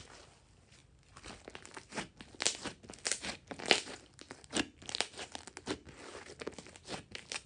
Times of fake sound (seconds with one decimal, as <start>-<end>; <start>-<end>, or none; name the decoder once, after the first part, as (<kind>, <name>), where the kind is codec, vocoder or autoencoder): none